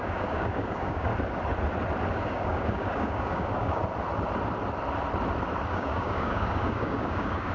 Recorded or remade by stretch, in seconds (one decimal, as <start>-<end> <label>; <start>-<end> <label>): 0.0-1.1 remade; 1.1-2.1 recorded; 2.1-3.8 remade; 3.8-5.7 recorded; 5.7-7.5 remade